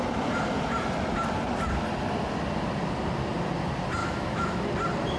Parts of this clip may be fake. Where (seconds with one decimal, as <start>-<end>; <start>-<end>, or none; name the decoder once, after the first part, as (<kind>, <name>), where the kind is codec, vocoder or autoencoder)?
4.0-4.7 (autoencoder, DAC-VAE)